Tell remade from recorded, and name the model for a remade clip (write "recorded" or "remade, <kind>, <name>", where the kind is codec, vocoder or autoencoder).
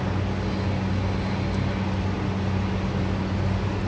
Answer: recorded